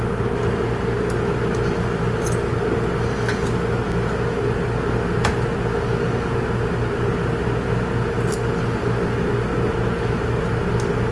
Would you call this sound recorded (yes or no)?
yes